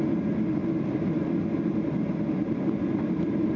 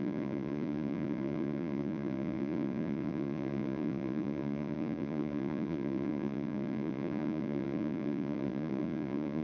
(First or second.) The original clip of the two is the first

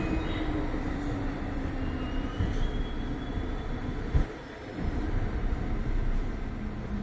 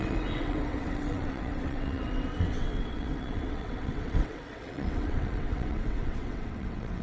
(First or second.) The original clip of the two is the first